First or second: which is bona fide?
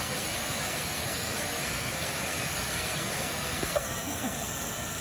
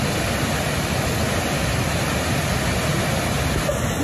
second